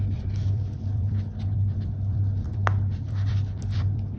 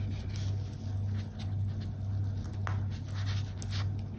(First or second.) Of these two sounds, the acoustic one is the second